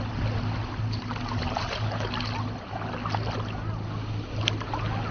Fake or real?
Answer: real